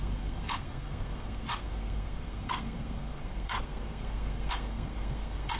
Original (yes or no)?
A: no